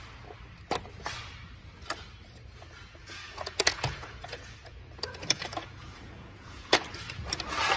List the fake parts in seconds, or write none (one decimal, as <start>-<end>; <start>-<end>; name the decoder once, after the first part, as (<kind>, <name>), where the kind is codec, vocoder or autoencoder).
3.0-6.8 (vocoder, Vocos)